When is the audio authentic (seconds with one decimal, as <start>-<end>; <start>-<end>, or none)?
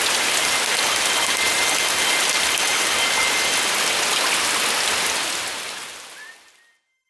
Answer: 0.0-7.1